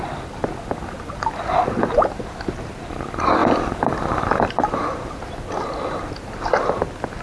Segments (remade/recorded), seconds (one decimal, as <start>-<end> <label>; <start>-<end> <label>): 0.0-7.2 recorded